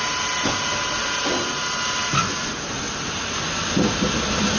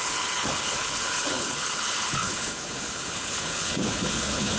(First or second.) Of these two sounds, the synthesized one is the second